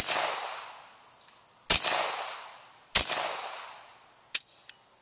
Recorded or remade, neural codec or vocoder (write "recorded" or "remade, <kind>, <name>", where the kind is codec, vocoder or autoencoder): recorded